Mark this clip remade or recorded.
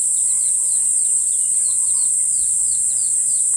recorded